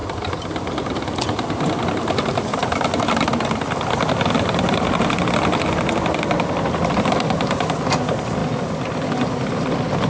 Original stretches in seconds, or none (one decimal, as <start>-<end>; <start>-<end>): 0.0-10.1